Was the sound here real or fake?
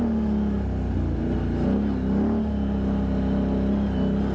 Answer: real